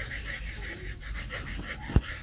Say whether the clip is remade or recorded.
recorded